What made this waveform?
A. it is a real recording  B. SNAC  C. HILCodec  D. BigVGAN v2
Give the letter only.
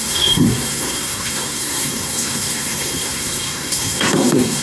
B